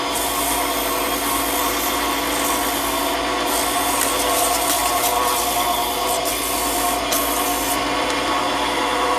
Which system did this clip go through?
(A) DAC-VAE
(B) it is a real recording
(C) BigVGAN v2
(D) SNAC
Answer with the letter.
B